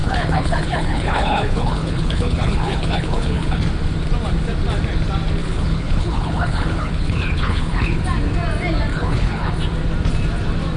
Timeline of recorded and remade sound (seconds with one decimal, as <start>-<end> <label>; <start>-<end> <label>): 0.0-3.6 remade; 3.6-5.4 recorded; 5.4-8.0 remade; 8.0-8.9 recorded; 8.9-9.5 remade; 9.5-10.8 recorded